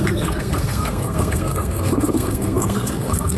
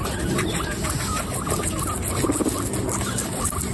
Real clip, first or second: second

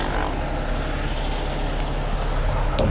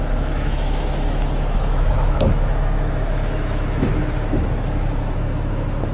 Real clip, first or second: first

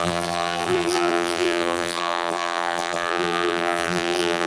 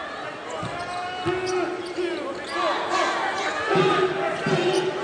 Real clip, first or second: second